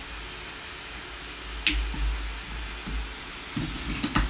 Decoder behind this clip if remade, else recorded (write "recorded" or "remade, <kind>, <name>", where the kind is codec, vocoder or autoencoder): recorded